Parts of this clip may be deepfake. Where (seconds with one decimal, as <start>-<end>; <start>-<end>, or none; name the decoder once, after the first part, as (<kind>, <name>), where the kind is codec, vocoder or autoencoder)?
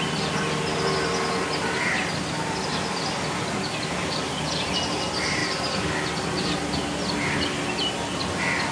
none